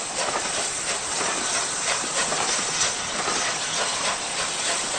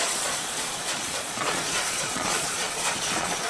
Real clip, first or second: first